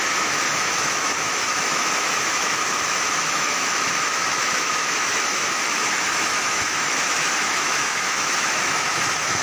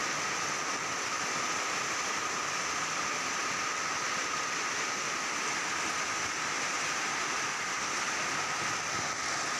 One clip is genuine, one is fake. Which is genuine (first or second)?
second